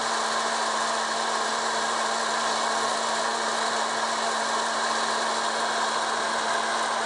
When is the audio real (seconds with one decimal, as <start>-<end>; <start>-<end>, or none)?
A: 0.0-7.1

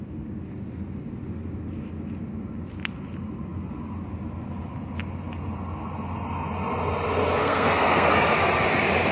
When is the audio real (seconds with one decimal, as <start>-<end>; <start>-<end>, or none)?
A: 0.0-7.4; 8.1-9.1

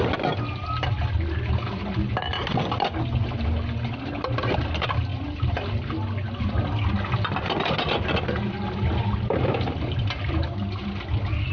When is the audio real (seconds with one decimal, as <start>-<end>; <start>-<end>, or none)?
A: 0.0-11.5

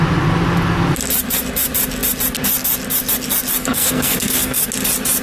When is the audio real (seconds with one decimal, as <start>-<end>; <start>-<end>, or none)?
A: 0.0-3.6; 4.6-5.2

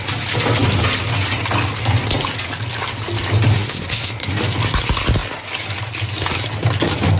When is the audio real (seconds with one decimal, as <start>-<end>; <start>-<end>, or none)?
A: 0.0-3.5; 4.4-7.2